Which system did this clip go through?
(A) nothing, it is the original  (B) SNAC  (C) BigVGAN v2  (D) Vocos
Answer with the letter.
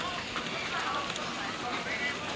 A